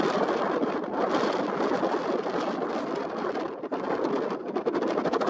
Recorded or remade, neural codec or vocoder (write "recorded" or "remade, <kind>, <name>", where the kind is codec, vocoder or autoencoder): recorded